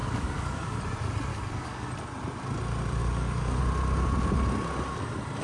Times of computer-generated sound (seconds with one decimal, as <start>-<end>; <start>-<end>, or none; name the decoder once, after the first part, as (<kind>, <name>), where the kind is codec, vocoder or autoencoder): 0.0-0.7 (codec, DAC); 1.3-1.9; 3.0-3.6